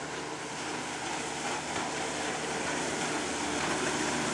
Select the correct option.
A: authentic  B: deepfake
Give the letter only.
A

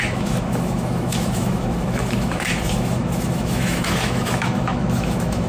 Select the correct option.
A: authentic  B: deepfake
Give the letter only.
B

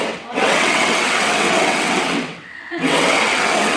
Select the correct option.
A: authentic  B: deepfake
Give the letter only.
B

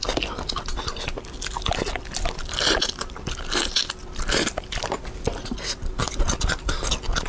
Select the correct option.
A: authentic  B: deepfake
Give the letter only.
A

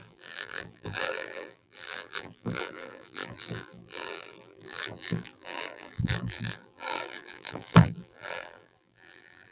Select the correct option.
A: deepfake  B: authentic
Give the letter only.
A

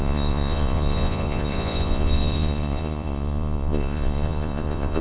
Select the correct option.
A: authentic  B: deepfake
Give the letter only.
B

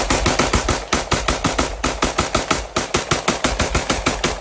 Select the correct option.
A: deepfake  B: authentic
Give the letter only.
B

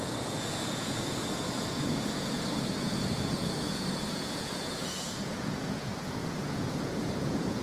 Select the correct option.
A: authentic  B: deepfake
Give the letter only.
B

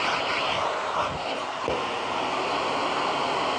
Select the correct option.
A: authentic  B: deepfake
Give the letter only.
A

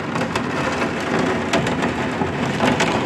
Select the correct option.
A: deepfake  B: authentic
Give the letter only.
B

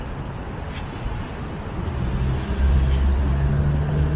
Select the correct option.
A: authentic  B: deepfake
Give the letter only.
A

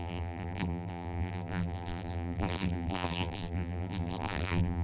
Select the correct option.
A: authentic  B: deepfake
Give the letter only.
B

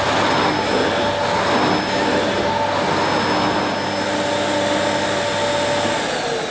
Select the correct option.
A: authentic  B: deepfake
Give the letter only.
A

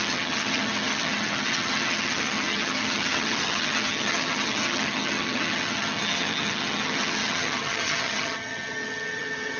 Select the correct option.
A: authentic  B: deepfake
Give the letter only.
B